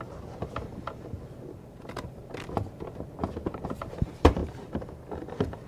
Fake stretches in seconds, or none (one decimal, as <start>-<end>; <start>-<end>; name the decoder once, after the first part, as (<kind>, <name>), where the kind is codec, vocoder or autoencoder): 0.0-2.2 (vocoder, BigVGAN v2); 3.8-5.7